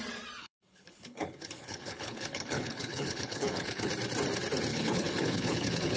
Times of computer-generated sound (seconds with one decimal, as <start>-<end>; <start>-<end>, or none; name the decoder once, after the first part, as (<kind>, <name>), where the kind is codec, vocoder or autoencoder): 0.4-3.9 (codec, HILCodec); 4.7-6.0